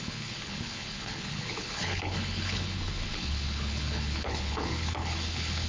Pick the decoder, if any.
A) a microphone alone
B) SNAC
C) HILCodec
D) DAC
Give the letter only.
C